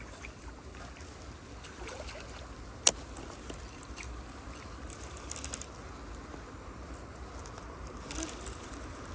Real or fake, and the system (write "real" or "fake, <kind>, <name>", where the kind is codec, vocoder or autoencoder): real